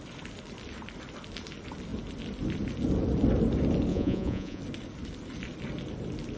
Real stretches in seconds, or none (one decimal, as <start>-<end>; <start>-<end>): 0.0-3.9; 4.6-6.4